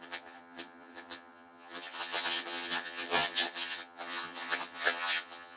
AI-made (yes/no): yes